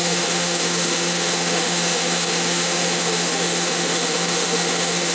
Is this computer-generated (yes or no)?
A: yes